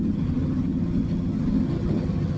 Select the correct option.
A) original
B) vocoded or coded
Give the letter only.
B